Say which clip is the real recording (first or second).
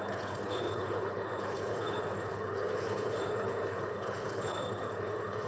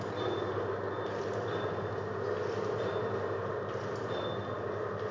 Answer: second